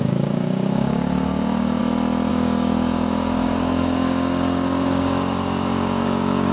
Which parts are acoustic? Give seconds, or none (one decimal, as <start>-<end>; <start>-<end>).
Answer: 1.8-2.3